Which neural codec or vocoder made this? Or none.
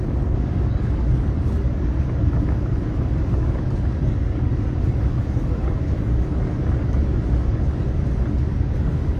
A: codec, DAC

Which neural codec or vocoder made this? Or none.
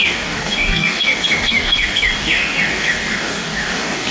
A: codec, DAC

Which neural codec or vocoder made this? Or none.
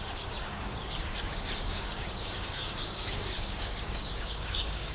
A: codec, DAC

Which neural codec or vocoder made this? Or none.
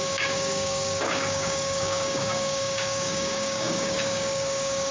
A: codec, DAC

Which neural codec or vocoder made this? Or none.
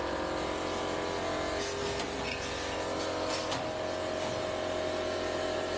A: none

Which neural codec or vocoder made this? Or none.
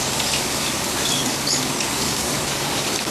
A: codec, DAC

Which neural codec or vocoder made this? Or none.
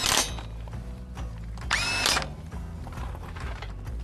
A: none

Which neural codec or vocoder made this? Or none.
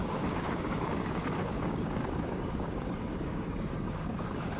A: codec, DAC